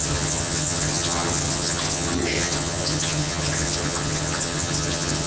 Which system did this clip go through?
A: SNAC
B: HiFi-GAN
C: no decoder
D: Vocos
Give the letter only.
B